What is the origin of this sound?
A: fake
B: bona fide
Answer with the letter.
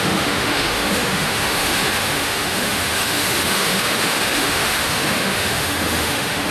A